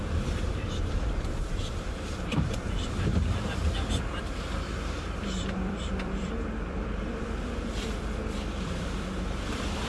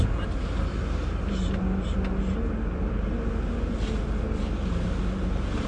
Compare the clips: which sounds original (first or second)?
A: second